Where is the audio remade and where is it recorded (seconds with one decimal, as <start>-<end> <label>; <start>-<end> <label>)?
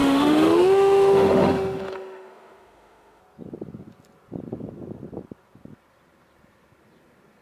0.0-3.2 remade; 3.2-7.4 recorded